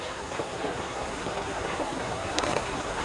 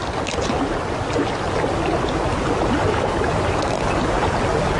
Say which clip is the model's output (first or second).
first